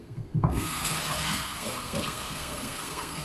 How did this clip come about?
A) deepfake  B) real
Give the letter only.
A